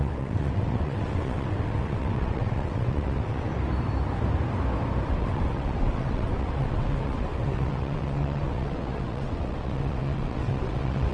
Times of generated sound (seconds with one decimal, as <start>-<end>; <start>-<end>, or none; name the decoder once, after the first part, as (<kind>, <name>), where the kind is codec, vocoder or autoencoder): 0.0-3.5 (vocoder, WaveNeXt); 5.1-11.1